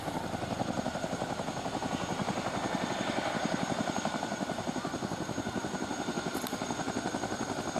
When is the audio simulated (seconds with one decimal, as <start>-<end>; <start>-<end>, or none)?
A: none